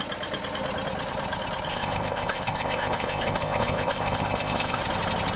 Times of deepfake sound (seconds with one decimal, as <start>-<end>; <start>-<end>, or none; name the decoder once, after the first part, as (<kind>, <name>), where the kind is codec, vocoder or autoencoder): 1.7-4.8 (codec, ZipCodec)